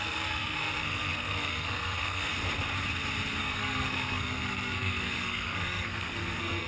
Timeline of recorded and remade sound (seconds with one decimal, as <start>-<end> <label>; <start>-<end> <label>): 0.0-2.3 remade; 2.3-3.4 recorded; 3.4-6.7 remade